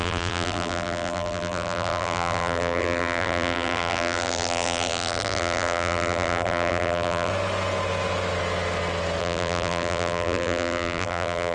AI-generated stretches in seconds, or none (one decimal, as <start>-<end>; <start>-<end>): 0.0-7.3; 9.2-11.5